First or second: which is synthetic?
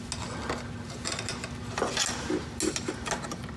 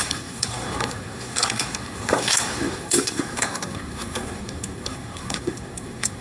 second